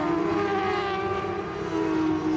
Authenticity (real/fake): real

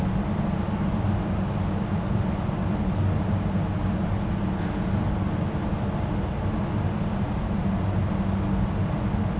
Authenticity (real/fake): real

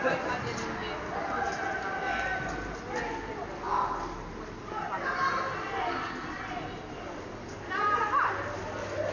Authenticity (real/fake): real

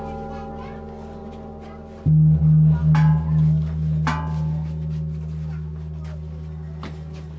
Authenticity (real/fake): real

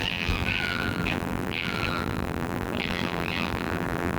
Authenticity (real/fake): fake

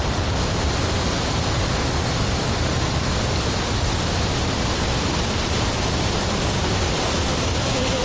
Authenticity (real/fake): real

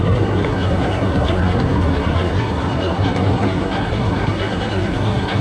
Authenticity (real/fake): fake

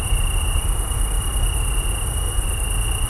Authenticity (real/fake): real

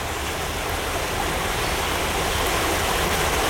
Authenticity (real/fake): real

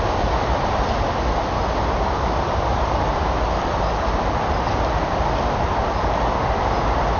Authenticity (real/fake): real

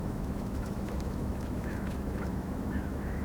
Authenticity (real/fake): fake